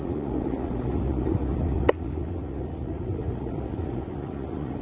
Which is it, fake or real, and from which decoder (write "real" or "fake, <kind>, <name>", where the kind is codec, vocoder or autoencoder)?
fake, vocoder, Vocos